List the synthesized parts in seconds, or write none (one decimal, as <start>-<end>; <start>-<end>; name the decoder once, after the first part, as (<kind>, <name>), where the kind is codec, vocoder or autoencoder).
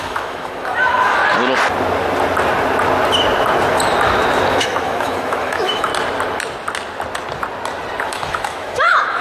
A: 0.0-1.2 (autoencoder, DAC-VAE); 4.5-5.9; 8.0-9.2